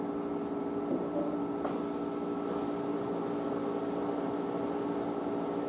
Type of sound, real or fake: real